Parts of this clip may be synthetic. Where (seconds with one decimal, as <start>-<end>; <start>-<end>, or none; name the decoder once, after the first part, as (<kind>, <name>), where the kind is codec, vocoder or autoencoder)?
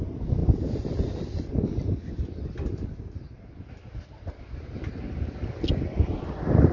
none